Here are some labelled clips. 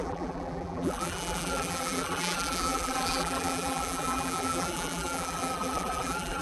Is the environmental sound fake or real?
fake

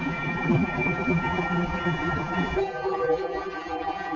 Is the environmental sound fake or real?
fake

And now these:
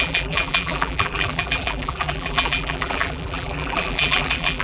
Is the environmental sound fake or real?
fake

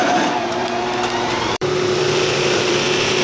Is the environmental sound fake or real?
fake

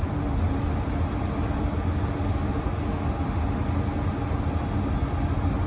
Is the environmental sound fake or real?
real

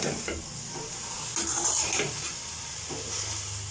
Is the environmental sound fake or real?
real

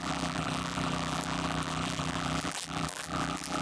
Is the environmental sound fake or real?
fake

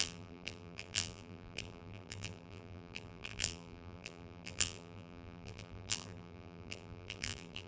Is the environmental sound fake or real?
fake